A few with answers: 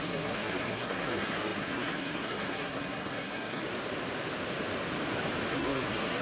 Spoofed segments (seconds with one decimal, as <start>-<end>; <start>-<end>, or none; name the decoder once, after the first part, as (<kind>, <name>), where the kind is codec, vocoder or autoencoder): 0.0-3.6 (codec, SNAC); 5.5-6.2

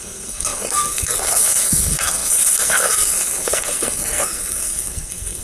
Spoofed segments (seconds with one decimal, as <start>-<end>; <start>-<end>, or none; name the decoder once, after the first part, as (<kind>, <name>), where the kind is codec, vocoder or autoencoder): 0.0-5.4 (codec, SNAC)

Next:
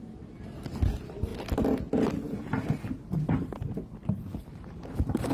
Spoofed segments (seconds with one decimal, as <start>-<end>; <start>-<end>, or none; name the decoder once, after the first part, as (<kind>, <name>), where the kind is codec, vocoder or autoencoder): none

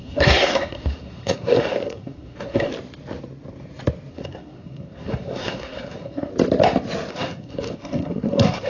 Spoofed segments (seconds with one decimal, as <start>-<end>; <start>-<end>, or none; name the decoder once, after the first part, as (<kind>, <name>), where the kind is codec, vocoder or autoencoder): 0.0-2.7 (codec, SNAC); 4.1-6.3; 7.1-8.7